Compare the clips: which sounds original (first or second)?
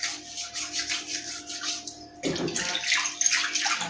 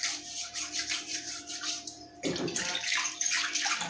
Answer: first